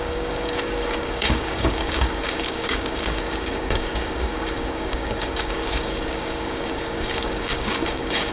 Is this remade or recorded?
remade